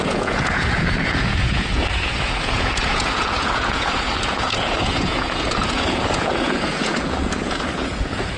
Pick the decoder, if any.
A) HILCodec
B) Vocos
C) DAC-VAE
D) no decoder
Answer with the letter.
B